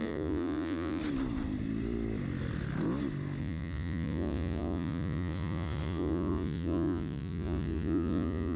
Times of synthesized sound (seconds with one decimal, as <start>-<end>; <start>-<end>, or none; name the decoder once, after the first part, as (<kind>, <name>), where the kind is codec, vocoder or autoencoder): 0.0-1.0 (vocoder, Vocos); 3.4-8.6